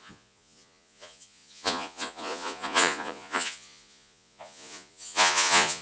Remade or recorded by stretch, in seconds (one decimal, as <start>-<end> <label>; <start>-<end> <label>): 0.0-5.8 remade